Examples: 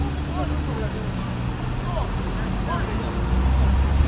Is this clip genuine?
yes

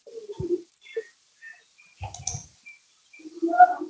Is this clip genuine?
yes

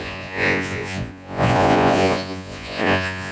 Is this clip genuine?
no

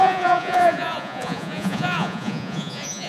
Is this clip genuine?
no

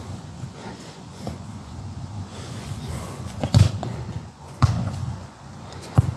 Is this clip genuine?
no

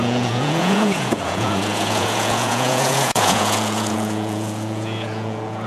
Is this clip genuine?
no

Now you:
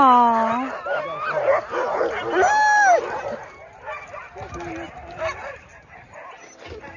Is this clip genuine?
yes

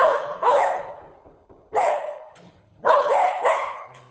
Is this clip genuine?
no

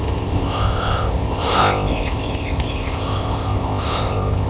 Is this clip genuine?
no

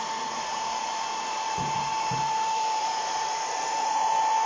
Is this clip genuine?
no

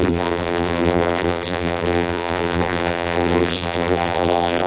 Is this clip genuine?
no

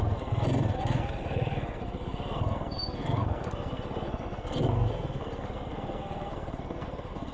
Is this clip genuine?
no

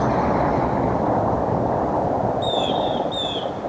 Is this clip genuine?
yes